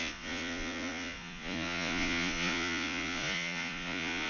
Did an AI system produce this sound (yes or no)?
yes